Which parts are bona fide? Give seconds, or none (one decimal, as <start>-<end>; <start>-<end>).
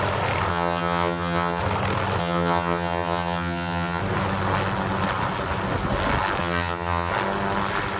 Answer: 0.0-0.5; 1.6-2.2; 4.0-6.4; 7.1-8.0